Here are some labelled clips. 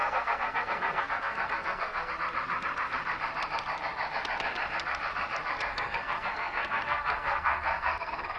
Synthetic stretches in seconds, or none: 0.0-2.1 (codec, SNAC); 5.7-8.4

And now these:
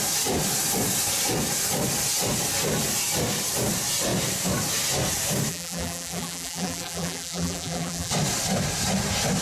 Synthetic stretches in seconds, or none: 5.5-8.1 (vocoder, BigVGAN v2)

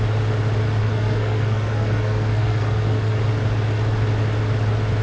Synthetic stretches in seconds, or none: 0.8-3.2 (codec, SNAC)

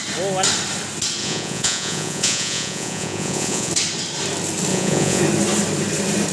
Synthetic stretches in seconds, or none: 1.2-3.7 (vocoder, Vocos); 4.7-5.2

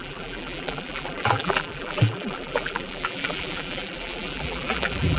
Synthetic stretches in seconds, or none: 0.0-5.2 (vocoder, BigVGAN v2)